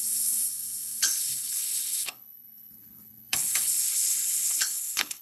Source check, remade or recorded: remade